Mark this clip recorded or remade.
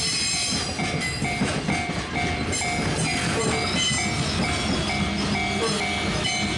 recorded